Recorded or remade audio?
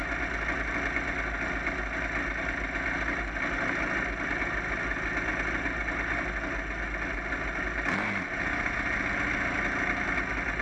recorded